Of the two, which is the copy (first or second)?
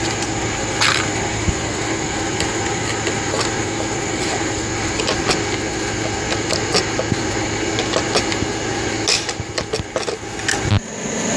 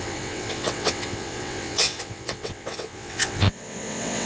second